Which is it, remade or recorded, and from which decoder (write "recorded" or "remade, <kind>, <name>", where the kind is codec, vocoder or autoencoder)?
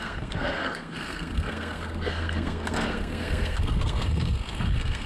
remade, codec, SNAC